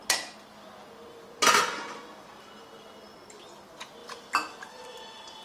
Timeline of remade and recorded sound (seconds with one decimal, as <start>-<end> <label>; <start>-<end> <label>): 0.0-5.4 recorded